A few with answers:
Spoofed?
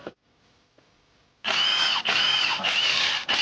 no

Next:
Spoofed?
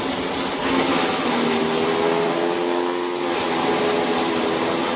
no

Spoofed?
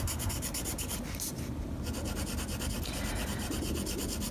no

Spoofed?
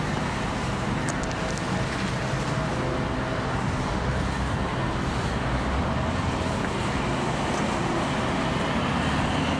no